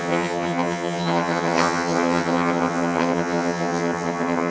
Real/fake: fake